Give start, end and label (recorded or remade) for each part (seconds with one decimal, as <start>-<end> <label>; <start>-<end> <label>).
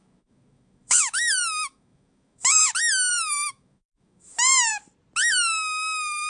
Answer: 0.0-2.6 remade; 2.6-3.1 recorded; 3.1-4.7 remade; 4.7-5.3 recorded; 5.3-6.3 remade